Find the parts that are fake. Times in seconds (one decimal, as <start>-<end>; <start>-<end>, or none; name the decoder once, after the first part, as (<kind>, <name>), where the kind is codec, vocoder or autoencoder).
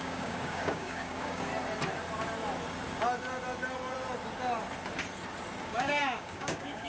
0.0-1.5 (codec, DAC); 5.6-6.9